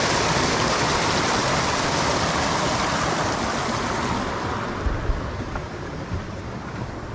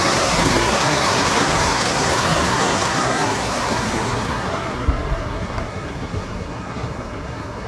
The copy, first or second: second